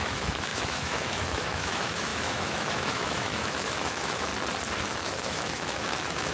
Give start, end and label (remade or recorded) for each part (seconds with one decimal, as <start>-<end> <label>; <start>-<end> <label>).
0.0-4.3 remade; 4.3-4.8 recorded; 4.8-6.3 remade